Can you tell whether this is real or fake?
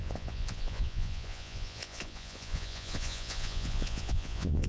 fake